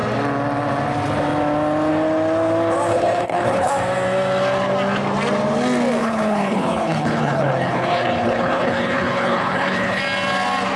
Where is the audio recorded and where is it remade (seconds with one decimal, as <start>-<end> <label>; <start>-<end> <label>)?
0.0-2.9 recorded; 2.9-3.7 remade; 3.7-6.0 recorded; 6.0-10.0 remade; 10.0-10.8 recorded